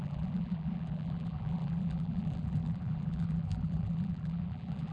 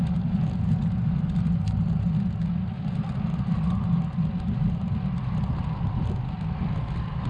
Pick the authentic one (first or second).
second